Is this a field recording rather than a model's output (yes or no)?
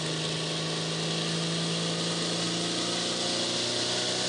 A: yes